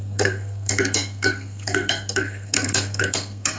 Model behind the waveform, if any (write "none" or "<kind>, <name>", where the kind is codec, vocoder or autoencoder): codec, SNAC